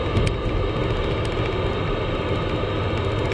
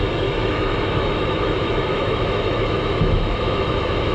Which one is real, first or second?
first